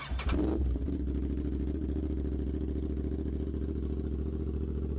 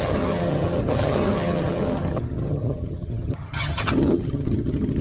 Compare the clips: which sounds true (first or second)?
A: first